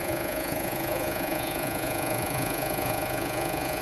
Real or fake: fake